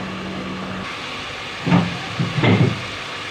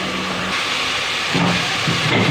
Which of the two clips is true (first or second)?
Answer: first